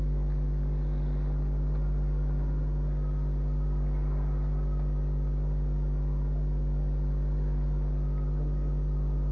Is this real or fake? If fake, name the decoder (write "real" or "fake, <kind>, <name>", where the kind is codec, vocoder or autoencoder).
real